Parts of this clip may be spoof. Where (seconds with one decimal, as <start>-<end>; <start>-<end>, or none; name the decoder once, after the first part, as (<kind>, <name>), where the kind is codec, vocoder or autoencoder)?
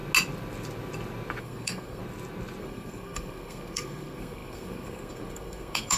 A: 1.4-2.0 (codec, SNAC); 2.6-6.0